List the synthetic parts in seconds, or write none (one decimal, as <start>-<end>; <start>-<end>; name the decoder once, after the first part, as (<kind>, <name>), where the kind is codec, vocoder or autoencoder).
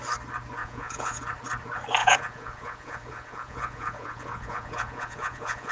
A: 0.6-1.2 (vocoder, Vocos); 2.0-5.7